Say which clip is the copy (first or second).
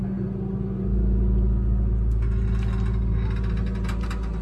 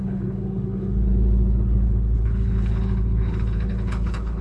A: second